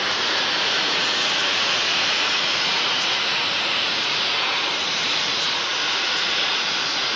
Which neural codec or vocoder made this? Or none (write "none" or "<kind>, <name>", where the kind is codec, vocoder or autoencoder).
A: vocoder, Vocos